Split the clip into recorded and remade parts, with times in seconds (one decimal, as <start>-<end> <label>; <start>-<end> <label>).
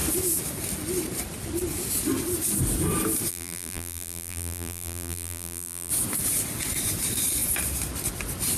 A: 0.0-3.3 recorded; 3.3-5.9 remade; 5.9-8.6 recorded